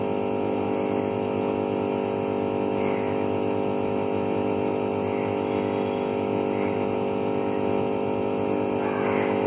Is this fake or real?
real